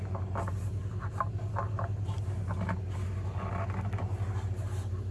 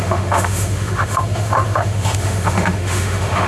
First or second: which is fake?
second